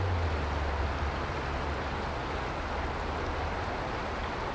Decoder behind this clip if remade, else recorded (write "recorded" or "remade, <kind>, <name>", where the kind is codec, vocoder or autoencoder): recorded